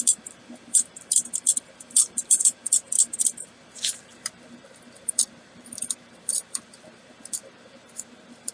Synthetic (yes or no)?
yes